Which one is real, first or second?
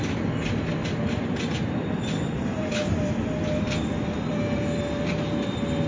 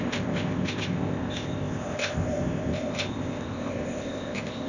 first